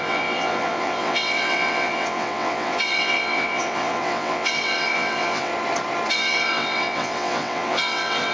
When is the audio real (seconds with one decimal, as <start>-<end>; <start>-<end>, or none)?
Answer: 5.5-6.1